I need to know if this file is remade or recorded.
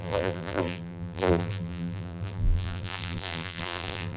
remade